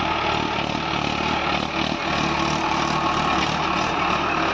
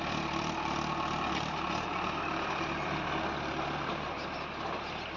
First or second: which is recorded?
first